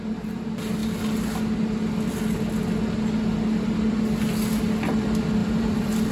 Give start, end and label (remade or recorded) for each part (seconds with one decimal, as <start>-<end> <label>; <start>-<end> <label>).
0.0-5.4 recorded; 5.4-6.1 remade